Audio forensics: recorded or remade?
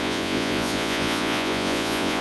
remade